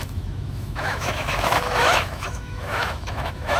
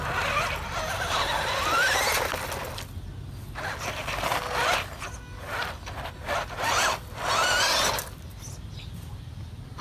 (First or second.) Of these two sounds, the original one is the second